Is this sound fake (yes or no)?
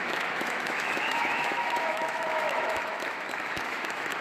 yes